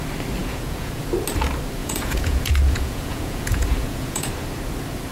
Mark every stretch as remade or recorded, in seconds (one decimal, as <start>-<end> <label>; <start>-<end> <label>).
0.0-0.4 recorded; 0.4-1.0 remade; 1.0-1.8 recorded; 1.8-4.3 remade; 4.3-5.1 recorded